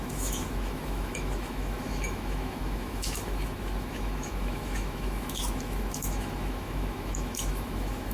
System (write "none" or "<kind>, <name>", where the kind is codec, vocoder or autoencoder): autoencoder, DAC-VAE